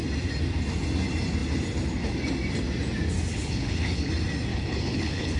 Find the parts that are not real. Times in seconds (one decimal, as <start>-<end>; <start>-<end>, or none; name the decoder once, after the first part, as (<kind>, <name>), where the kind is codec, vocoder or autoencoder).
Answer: 3.3-4.1 (codec, HILCodec); 4.5-5.4